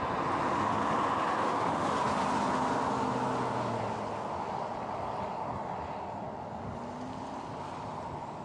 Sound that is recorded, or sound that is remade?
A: recorded